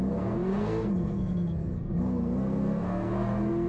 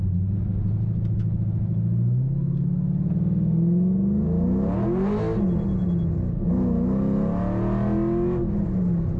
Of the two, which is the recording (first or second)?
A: second